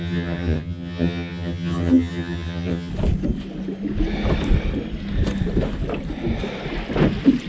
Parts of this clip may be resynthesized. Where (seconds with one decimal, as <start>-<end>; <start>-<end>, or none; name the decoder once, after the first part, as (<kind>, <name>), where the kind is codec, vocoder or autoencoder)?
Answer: 0.0-2.9 (vocoder, HiFi-GAN)

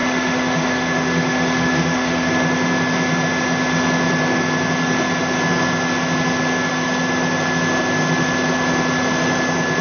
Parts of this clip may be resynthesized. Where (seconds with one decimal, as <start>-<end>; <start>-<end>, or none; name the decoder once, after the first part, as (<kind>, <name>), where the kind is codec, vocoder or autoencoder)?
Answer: 0.0-2.3 (autoencoder, DAC-VAE)

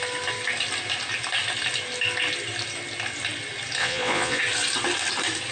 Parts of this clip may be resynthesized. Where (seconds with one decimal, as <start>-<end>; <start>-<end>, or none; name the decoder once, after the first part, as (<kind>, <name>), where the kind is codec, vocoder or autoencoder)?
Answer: 3.8-4.4 (vocoder, Vocos)

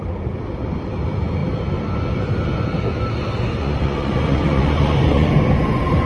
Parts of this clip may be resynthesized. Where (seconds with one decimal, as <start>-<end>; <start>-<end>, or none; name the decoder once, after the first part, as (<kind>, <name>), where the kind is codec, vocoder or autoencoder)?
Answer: 3.6-5.3 (vocoder, Vocos)

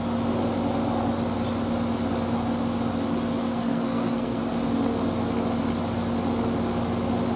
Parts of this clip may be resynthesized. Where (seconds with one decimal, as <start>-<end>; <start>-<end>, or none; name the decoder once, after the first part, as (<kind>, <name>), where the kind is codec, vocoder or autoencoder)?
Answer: 3.4-4.4 (codec, SNAC)

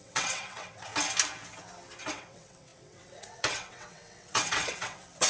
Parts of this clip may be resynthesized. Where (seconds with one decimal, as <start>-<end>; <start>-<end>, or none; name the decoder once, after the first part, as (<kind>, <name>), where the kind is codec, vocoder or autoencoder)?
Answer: 0.0-0.9 (vocoder, WaveNeXt); 2.1-5.3

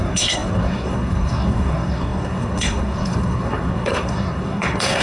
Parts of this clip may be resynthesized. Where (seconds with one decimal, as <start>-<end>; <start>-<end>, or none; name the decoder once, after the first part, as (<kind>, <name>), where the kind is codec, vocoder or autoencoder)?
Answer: 0.0-5.0 (codec, SNAC)

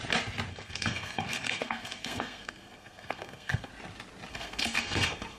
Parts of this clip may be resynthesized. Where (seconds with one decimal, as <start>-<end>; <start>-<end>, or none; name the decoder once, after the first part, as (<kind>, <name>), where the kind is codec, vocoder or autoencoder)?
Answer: 0.5-3.7 (codec, SNAC); 4.3-5.4